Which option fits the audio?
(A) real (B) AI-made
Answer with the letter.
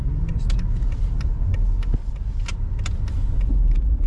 A